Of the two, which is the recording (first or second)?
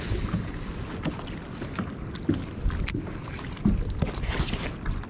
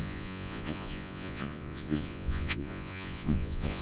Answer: first